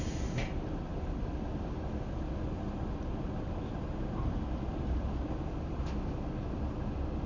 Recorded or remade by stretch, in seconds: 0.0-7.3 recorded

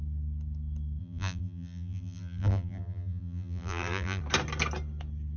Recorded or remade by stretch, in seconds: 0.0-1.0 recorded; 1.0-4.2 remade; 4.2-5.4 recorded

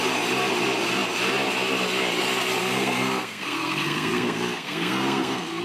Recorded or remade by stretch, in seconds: 0.0-2.6 recorded; 2.6-5.6 remade

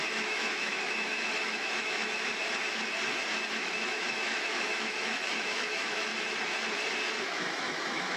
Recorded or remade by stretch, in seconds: 0.0-2.3 remade; 2.3-3.5 recorded; 3.5-6.1 remade; 6.1-7.2 recorded; 7.2-8.2 remade